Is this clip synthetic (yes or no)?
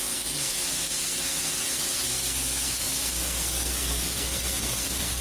yes